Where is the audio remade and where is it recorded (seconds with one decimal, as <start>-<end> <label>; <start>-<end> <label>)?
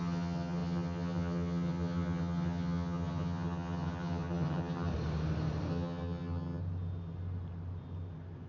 0.0-4.9 remade; 4.9-5.7 recorded; 5.7-6.6 remade; 6.6-8.5 recorded